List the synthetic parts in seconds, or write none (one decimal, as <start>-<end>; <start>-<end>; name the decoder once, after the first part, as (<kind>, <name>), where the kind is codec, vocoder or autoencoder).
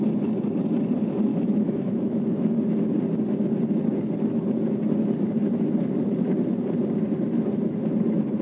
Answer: 1.3-2.8 (autoencoder, DAC-VAE)